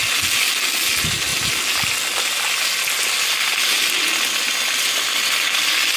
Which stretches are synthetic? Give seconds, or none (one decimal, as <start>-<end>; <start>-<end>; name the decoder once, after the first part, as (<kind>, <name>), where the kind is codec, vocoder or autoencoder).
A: none